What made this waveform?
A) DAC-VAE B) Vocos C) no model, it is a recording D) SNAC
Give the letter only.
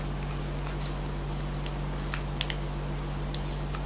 C